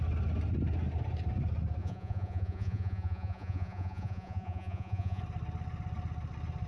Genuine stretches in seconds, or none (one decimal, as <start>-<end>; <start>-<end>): 0.0-1.8; 5.2-6.7